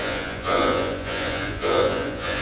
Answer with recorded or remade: remade